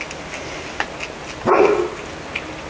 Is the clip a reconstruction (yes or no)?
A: no